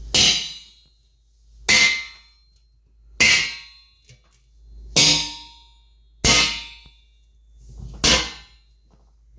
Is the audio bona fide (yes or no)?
yes